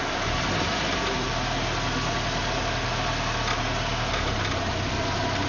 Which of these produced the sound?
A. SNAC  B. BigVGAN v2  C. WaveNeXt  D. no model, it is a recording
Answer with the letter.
D